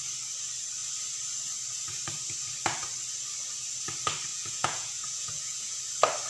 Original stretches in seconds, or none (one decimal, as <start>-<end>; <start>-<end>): 0.0-4.3; 5.8-6.3

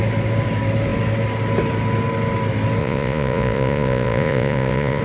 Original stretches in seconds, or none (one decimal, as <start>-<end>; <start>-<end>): 0.0-2.8